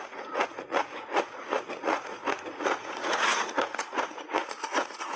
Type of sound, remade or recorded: remade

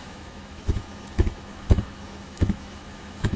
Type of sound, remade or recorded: remade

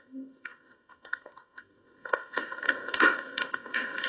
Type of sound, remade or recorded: remade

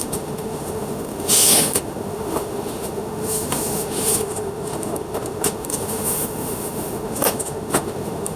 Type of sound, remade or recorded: remade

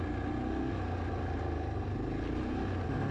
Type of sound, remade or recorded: recorded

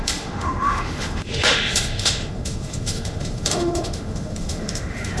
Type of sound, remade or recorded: remade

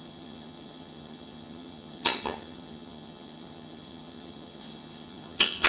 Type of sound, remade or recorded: remade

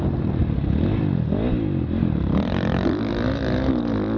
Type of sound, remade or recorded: recorded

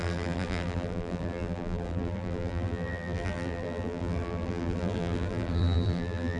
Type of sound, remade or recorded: remade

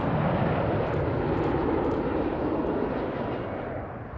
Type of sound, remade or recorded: recorded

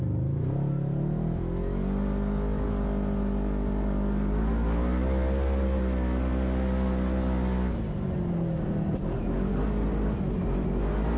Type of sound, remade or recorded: recorded